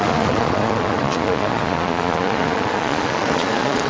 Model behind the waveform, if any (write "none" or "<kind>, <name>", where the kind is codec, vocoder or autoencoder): vocoder, Vocos